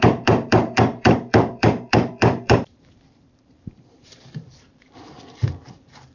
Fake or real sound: fake